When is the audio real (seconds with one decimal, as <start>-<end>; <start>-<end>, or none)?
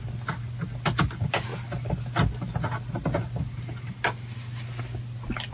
0.0-5.5